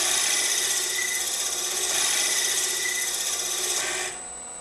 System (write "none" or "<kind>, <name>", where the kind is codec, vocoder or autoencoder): none